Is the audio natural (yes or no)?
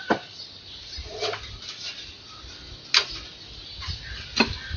yes